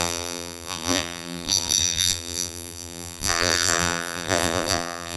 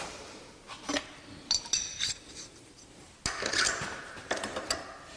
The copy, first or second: first